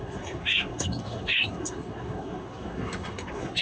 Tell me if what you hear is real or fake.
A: fake